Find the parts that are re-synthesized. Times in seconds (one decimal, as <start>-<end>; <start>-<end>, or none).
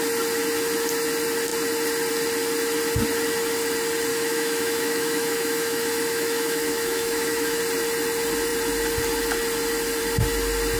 4.1-7.6